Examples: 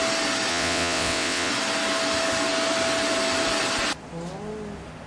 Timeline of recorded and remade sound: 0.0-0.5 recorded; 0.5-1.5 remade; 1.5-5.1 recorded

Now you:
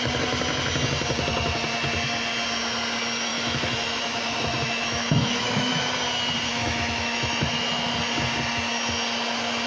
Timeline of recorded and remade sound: 0.0-3.3 recorded; 3.3-5.8 remade; 5.8-6.5 recorded; 6.5-7.9 remade; 7.9-9.7 recorded

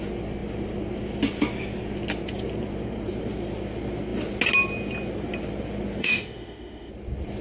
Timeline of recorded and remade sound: 0.0-6.0 recorded; 6.0-6.9 remade; 6.9-7.4 recorded

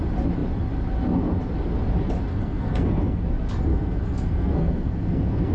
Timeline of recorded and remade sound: 0.0-2.3 recorded; 2.3-3.2 remade; 3.2-3.7 recorded; 3.7-5.5 remade

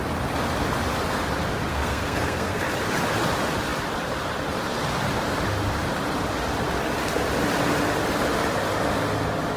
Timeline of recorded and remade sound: 0.0-1.7 recorded; 1.7-2.6 remade; 2.6-9.6 recorded

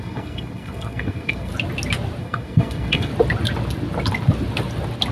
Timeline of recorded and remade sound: 0.0-1.5 remade; 1.5-2.2 recorded; 2.2-3.1 remade; 3.1-5.1 recorded

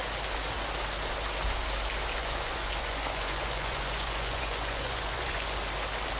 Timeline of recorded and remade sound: 0.0-2.2 recorded; 2.2-5.6 remade; 5.6-6.2 recorded